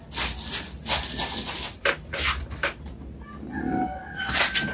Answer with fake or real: real